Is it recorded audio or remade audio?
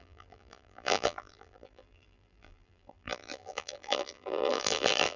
remade